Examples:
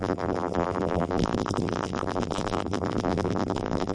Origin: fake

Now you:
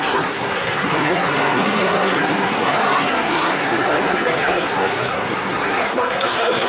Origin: fake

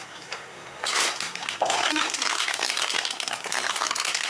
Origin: fake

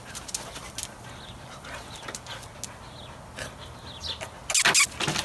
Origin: real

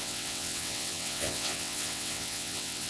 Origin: fake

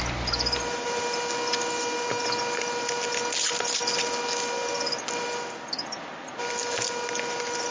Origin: real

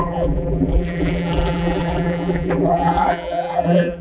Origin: fake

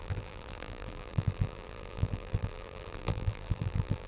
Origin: fake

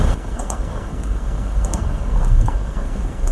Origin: fake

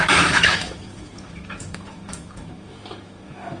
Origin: fake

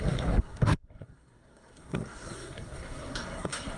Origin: fake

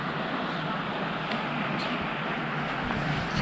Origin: real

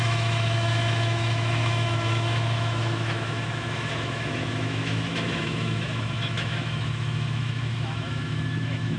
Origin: fake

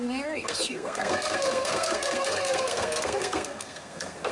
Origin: fake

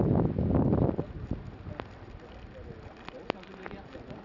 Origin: real